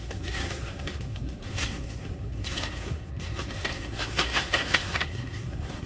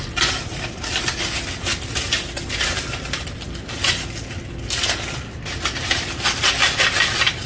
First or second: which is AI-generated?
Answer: first